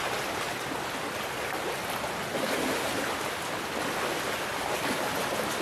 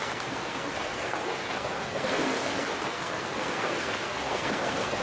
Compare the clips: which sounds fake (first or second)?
second